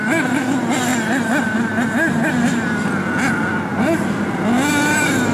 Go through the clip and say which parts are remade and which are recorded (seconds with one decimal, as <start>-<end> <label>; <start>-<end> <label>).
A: 0.0-5.3 recorded